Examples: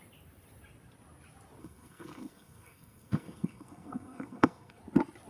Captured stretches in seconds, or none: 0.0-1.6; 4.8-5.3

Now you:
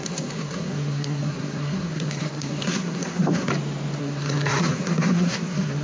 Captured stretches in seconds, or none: 3.5-4.0

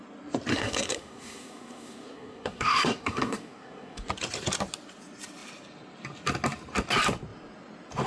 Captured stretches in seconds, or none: 0.0-0.5; 4.1-8.1